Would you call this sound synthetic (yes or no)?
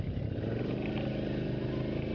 no